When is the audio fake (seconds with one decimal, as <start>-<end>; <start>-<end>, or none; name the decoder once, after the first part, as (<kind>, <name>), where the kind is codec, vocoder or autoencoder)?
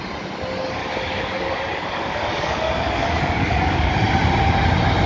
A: 0.8-3.9 (codec, DAC)